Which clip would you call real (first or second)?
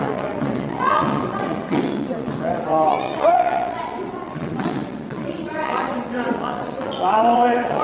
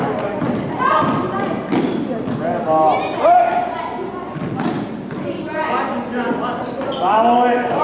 second